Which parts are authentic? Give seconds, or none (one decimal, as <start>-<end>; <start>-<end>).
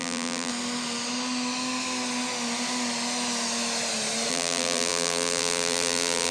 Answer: 0.5-4.3